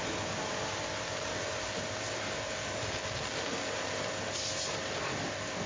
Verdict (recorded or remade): recorded